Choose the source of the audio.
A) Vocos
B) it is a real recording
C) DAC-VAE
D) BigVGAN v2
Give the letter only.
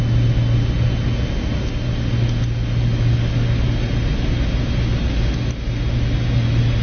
B